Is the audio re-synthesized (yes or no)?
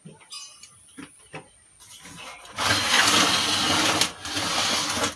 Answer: no